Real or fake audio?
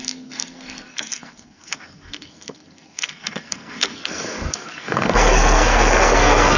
fake